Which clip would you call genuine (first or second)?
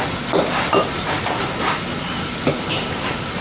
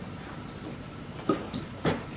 first